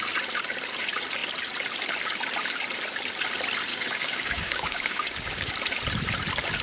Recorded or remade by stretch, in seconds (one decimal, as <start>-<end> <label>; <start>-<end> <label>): 0.0-3.7 recorded; 3.7-5.5 remade; 5.5-6.6 recorded